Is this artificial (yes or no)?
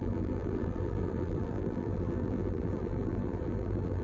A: yes